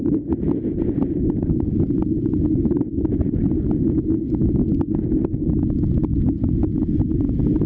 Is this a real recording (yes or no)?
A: yes